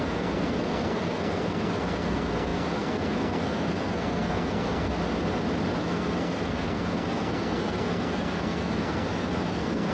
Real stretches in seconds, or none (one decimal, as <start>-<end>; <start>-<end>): 4.9-5.8